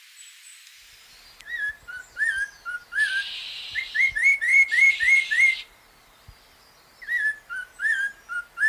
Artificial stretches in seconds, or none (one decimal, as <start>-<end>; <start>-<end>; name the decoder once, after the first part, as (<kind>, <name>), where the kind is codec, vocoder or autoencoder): 4.5-6.4 (vocoder, BigVGAN v2); 7.6-8.1